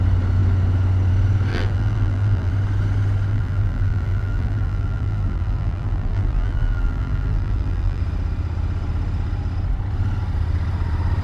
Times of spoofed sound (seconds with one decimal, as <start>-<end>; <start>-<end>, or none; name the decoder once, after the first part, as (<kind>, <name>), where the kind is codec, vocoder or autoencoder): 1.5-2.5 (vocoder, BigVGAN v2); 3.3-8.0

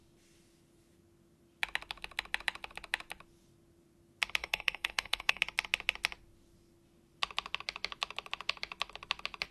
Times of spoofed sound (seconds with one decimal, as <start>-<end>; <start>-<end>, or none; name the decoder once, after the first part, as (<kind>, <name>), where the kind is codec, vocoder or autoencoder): 4.4-5.4 (codec, SNAC)

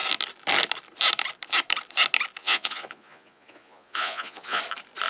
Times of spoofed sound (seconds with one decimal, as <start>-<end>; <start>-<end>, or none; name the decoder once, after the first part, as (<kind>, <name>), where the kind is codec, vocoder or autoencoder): 2.4-4.6 (vocoder, Vocos)